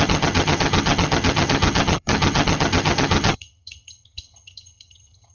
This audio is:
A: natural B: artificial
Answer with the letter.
B